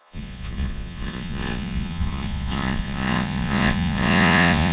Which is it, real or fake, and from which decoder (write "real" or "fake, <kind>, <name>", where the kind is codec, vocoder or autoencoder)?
fake, vocoder, Vocos